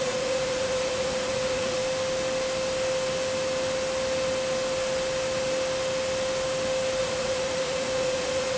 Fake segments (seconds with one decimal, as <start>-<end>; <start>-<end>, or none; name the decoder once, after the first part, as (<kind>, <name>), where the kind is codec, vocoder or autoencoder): 0.0-1.8 (vocoder, Vocos); 7.0-8.6